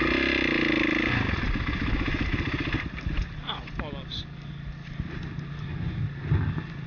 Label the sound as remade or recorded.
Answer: recorded